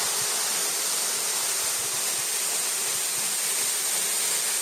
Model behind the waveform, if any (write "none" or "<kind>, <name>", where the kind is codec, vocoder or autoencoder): none